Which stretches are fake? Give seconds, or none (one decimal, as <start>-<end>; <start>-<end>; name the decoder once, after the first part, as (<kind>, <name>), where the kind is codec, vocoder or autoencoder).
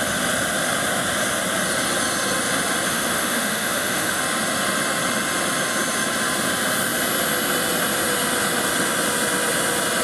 2.9-4.2 (autoencoder, DAC-VAE)